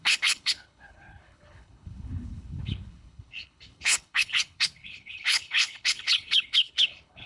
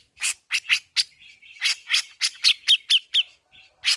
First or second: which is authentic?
second